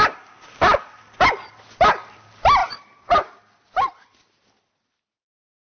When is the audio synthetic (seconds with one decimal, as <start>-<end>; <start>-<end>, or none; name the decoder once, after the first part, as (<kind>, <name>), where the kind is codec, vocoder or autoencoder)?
2.6-3.3 (vocoder, BigVGAN v2)